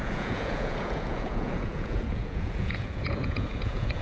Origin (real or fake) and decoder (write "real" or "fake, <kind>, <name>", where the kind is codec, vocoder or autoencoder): fake, vocoder, Vocos